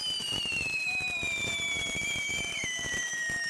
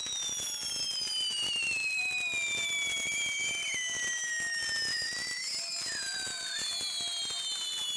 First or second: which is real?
second